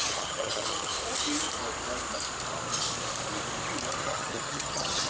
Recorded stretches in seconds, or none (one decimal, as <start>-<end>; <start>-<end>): 0.9-4.0

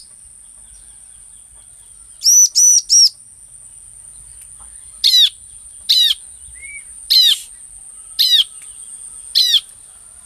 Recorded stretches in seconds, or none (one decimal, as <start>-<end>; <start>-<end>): 0.0-10.3